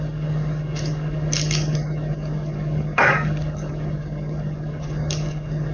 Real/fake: fake